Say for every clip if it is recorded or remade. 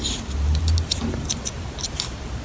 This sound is recorded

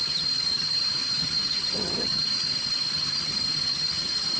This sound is remade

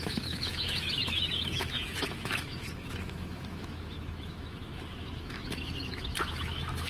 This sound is remade